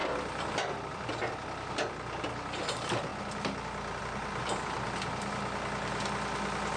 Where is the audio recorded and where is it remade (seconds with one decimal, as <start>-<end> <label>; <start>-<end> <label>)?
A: 0.0-6.8 recorded